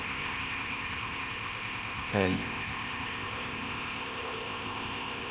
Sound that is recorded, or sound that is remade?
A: remade